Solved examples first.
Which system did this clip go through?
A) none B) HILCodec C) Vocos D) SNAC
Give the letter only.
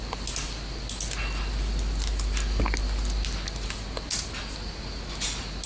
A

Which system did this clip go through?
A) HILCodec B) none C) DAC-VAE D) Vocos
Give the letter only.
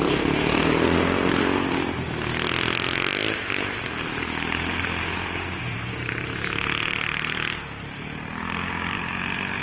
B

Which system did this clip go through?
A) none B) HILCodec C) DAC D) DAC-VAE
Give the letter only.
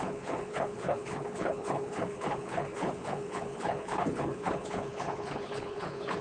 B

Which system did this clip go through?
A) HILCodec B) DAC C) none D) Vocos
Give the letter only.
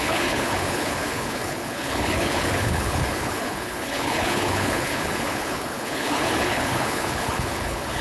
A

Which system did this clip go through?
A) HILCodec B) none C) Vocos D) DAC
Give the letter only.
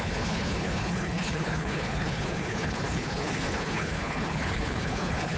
A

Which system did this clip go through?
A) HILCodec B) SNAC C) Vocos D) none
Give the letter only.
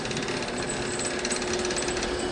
D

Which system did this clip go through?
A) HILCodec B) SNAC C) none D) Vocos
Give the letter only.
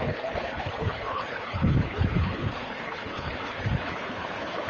A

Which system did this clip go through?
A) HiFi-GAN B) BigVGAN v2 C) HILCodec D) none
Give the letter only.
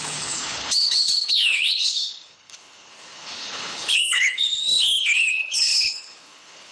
C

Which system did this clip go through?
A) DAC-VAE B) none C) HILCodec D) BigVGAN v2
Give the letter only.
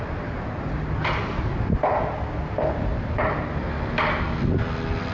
B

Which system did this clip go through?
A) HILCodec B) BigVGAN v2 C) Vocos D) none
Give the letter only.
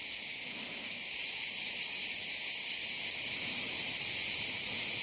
D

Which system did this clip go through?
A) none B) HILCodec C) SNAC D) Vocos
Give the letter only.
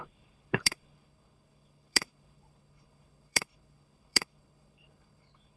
B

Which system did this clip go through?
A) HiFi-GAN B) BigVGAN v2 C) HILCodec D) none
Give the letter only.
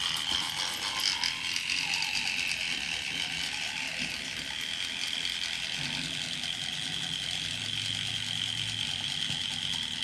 D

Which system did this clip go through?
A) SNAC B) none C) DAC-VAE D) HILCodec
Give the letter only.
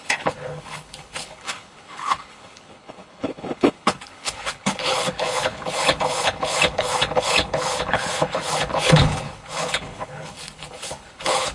D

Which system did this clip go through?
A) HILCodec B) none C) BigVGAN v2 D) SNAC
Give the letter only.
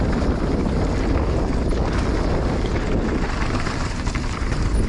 B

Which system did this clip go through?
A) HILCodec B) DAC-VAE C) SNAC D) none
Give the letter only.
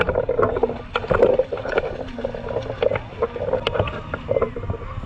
D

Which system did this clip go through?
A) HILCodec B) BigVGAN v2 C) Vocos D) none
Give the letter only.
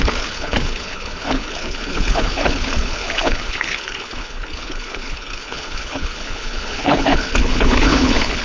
A